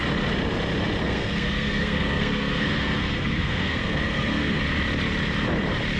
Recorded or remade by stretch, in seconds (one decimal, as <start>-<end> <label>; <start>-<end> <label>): 0.0-1.0 recorded; 1.0-4.6 remade; 4.6-6.0 recorded